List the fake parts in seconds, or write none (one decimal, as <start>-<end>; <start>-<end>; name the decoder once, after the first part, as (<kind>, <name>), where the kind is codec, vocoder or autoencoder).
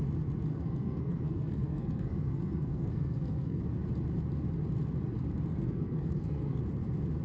0.5-3.6 (codec, SNAC); 5.5-6.6